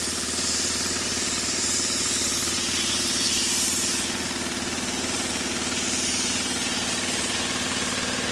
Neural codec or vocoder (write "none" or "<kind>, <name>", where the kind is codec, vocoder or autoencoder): vocoder, BigVGAN v2